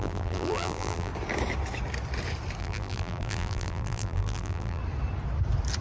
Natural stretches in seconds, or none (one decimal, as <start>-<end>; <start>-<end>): 1.1-2.6; 4.8-5.8